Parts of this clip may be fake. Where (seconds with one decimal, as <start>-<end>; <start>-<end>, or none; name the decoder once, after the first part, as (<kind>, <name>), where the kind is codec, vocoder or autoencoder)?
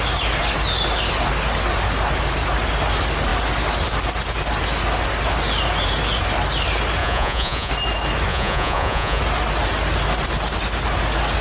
7.0-7.7 (vocoder, Vocos); 8.3-9.2